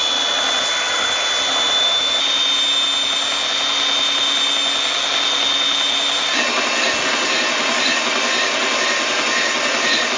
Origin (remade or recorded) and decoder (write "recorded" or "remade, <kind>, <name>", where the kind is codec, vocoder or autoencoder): recorded